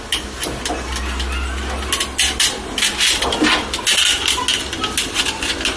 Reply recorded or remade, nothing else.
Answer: recorded